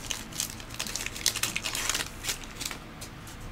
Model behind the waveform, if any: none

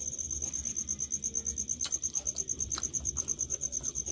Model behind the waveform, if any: none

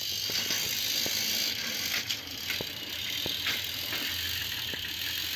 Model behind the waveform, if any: none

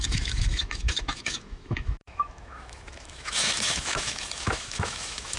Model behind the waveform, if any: autoencoder, DAC-VAE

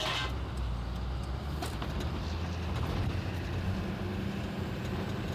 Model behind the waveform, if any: none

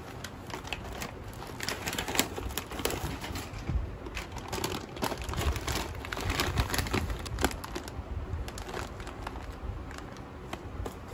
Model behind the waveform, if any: none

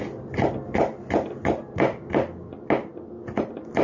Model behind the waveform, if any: none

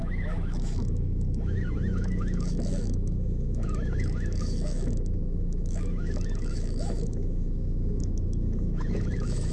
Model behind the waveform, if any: autoencoder, DAC-VAE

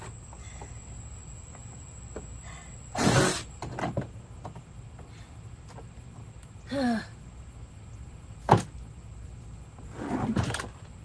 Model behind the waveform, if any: none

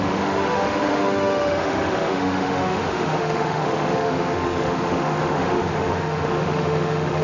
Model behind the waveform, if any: autoencoder, DAC-VAE